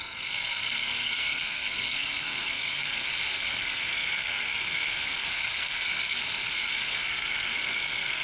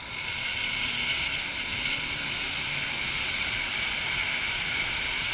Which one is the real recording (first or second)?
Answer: second